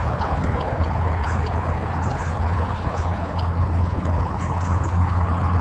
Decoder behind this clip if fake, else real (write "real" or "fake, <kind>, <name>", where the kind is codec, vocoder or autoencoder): fake, codec, HILCodec